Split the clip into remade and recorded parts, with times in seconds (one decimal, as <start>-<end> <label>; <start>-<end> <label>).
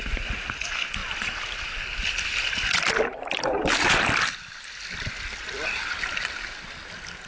0.0-7.3 recorded